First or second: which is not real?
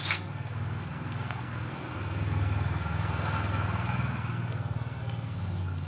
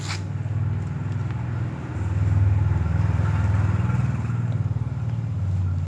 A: first